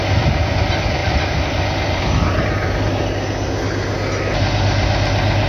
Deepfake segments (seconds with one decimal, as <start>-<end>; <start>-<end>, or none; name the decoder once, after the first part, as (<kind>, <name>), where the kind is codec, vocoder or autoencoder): 1.0-2.0 (vocoder, BigVGAN v2)